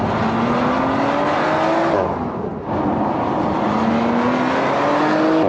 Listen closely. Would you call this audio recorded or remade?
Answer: recorded